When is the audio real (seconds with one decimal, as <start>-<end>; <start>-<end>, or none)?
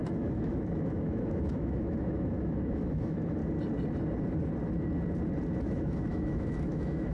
3.4-5.6